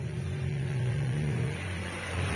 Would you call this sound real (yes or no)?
no